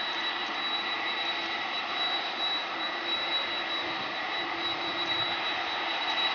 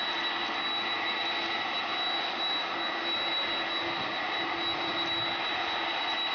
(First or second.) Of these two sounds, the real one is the second